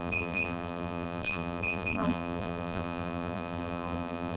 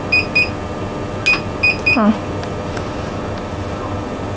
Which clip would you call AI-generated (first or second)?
first